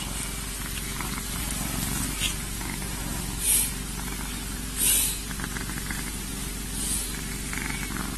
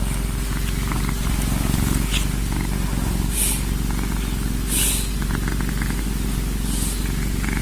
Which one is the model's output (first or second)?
first